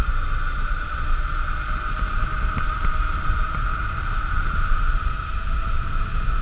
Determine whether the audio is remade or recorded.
recorded